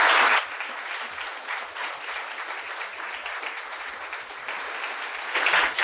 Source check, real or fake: real